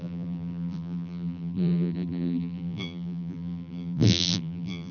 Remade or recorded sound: remade